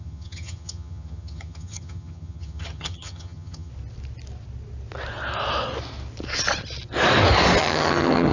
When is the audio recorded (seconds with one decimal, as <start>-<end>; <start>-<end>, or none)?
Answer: 3.7-7.6